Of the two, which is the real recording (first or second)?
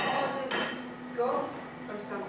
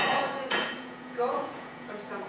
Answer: first